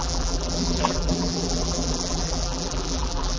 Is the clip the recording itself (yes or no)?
no